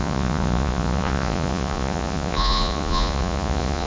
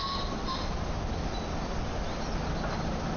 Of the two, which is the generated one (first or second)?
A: first